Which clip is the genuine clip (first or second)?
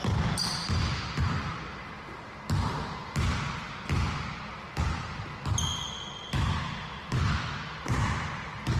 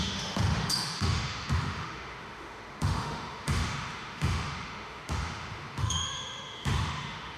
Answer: first